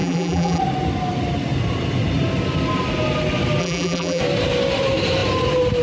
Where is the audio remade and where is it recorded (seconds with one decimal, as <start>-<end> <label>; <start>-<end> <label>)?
0.0-0.6 remade; 0.6-3.6 recorded; 3.6-4.2 remade; 4.2-5.8 recorded

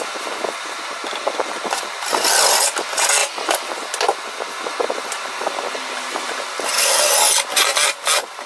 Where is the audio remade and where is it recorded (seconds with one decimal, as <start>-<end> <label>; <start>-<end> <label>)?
0.0-8.5 recorded

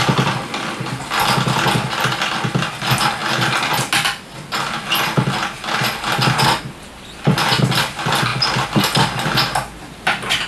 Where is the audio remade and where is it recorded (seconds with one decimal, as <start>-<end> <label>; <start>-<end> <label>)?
0.0-10.5 recorded

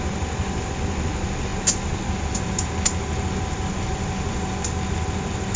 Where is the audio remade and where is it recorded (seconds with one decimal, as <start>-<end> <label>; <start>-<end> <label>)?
0.0-5.6 recorded

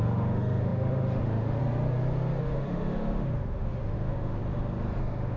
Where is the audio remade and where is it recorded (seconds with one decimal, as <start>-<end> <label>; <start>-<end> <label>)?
0.0-1.6 remade; 1.6-2.4 recorded; 2.4-4.4 remade; 4.4-5.0 recorded; 5.0-5.4 remade

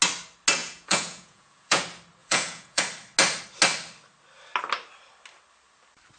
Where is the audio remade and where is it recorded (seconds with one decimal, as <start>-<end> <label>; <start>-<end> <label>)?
0.0-0.6 recorded; 0.6-1.8 remade; 1.8-2.2 recorded; 2.2-2.8 remade; 2.8-6.2 recorded

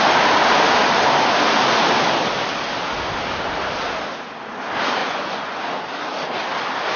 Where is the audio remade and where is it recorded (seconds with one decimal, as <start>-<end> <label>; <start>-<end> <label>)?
0.0-5.0 recorded; 5.0-5.6 remade; 5.6-7.0 recorded

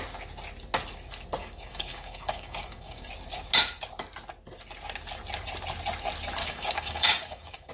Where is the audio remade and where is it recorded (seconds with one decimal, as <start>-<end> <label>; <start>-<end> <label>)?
0.0-1.4 recorded; 1.4-3.1 remade; 3.1-6.4 recorded; 6.4-7.7 remade